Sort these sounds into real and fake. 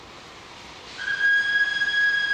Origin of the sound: real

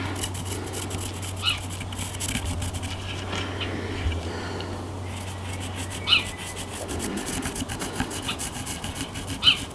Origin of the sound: real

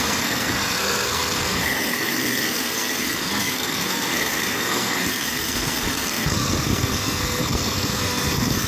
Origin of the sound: fake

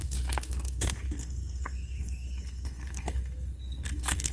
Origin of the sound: fake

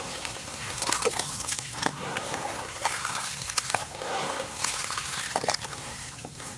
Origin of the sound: fake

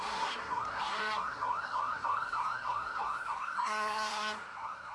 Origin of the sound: fake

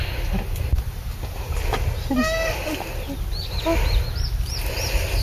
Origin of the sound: real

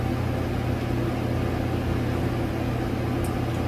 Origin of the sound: real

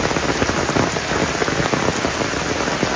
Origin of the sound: real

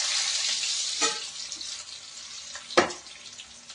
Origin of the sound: real